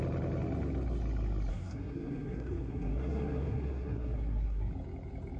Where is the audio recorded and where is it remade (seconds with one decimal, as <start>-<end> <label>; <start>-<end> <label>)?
0.0-1.5 recorded; 1.5-4.7 remade; 4.7-5.4 recorded